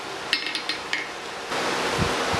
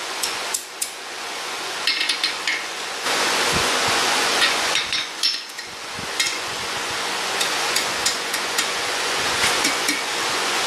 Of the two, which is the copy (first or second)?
second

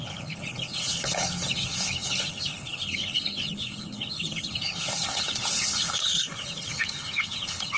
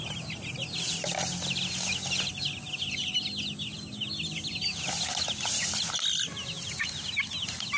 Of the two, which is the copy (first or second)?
first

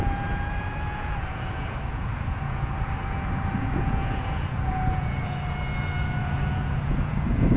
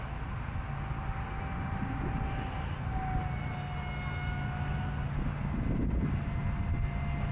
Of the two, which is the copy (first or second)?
first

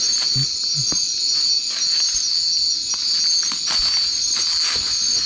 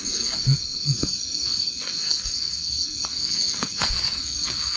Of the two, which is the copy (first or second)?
second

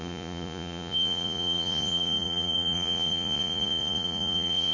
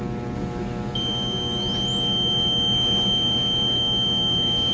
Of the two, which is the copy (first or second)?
first